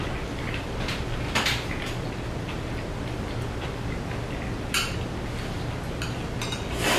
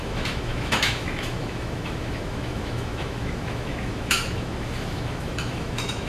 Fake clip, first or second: second